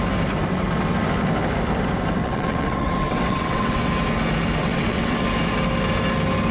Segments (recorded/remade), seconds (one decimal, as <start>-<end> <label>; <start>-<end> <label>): 0.0-2.2 recorded; 2.2-3.9 remade; 3.9-4.6 recorded; 4.6-5.2 remade; 5.2-6.5 recorded